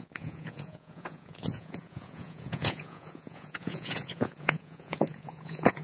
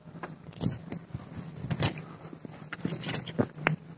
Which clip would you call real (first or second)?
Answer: second